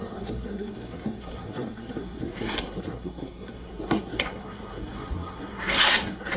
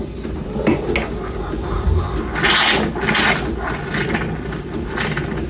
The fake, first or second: first